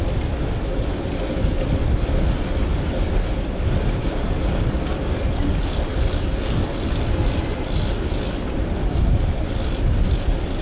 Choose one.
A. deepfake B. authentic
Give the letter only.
B